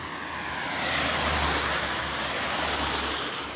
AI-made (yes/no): no